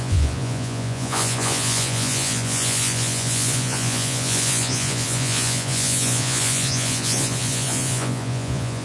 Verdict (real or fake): fake